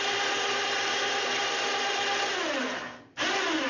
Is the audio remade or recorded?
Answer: recorded